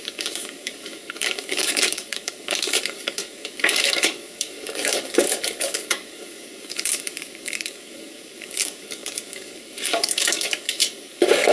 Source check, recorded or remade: remade